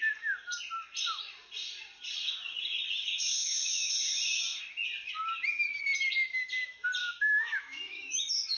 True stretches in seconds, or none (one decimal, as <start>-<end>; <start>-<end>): 0.0-3.4; 3.9-7.0; 8.2-8.6